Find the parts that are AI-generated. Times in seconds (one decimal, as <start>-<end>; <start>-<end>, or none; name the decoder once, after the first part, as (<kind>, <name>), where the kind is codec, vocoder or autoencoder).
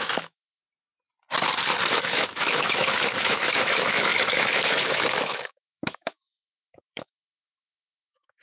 0.0-0.6 (autoencoder, DAC-VAE); 2.0-8.4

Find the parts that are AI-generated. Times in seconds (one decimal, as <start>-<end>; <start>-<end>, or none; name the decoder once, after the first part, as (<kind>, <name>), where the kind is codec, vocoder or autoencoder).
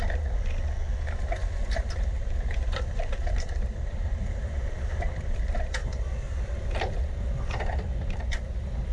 1.6-4.8 (vocoder, BigVGAN v2)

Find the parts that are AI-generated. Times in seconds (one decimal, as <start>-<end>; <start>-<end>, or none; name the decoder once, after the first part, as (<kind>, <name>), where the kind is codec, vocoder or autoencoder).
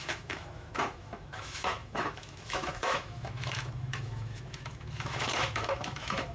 0.0-6.3 (autoencoder, DAC-VAE)